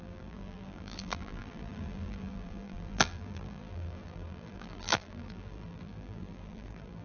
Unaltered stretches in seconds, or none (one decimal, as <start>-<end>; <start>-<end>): none